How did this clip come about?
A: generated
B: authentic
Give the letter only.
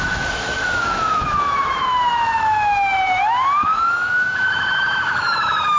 A